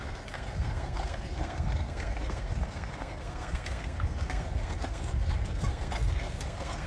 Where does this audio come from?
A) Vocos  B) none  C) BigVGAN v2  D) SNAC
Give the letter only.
D